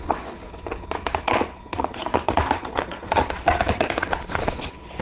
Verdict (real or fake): fake